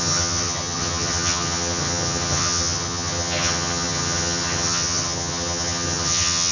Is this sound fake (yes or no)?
yes